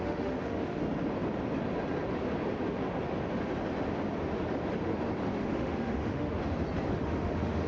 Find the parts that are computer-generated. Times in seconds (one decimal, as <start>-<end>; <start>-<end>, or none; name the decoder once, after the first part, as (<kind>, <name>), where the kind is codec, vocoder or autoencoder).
0.0-0.8 (autoencoder, DAC-VAE); 5.4-6.4; 6.9-7.7